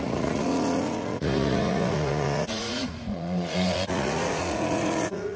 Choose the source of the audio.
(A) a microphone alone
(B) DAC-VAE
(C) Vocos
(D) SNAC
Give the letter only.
C